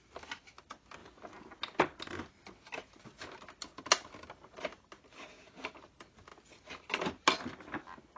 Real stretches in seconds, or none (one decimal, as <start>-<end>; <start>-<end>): 0.0-8.2